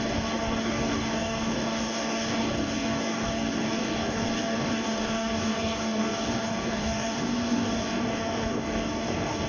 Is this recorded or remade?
remade